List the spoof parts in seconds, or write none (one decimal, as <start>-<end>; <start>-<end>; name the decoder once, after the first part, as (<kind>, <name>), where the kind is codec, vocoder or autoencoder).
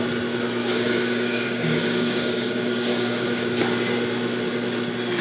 0.6-3.6 (codec, DAC)